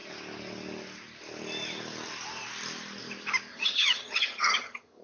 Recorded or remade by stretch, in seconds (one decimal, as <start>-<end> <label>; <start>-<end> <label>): 0.0-3.5 recorded; 3.5-5.0 remade